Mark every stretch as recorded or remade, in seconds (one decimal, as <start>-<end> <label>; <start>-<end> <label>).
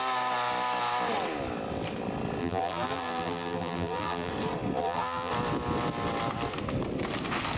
0.0-2.4 recorded; 2.4-4.3 remade; 4.3-4.8 recorded; 4.8-5.3 remade; 5.3-7.6 recorded